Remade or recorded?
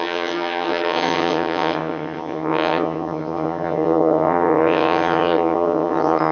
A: remade